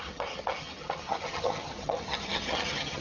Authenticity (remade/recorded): remade